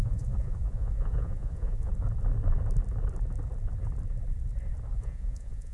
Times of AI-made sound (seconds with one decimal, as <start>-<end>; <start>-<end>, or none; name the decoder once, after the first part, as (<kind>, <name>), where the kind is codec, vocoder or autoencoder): 0.0-1.9 (vocoder, Vocos); 4.9-5.7